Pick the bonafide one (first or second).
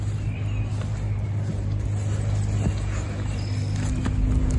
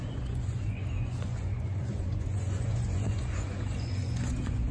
first